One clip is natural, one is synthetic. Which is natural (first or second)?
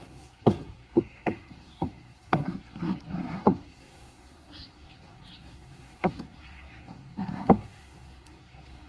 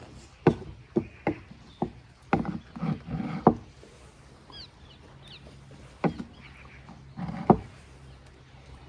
second